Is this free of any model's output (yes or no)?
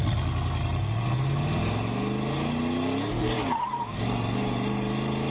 yes